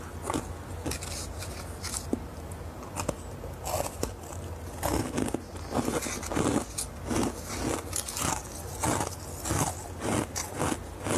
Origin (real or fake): real